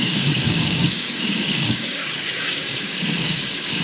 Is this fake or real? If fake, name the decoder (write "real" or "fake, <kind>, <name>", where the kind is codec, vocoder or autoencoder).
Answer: fake, codec, DAC